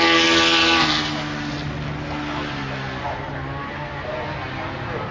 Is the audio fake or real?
real